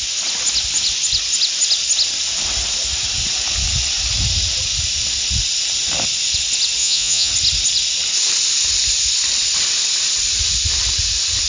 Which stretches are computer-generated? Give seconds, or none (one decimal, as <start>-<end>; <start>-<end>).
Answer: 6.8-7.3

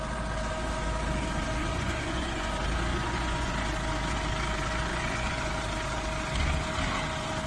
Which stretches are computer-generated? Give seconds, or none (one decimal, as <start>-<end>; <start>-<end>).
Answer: 1.6-2.5; 2.9-3.5; 4.9-5.5

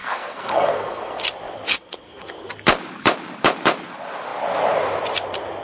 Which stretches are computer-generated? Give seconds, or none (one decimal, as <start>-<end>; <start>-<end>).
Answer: 0.0-1.2; 1.7-2.3

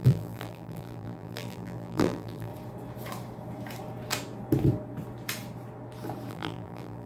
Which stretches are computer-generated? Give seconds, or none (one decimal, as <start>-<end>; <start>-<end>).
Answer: 0.0-2.5; 6.3-7.1